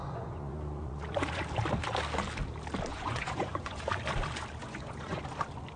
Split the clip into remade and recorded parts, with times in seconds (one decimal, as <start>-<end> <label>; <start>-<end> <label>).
0.0-1.4 remade; 1.4-2.9 recorded; 2.9-3.8 remade; 3.8-4.6 recorded; 4.6-5.2 remade; 5.2-5.8 recorded